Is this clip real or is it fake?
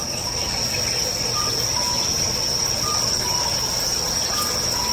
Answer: real